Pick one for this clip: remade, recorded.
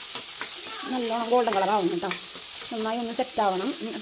recorded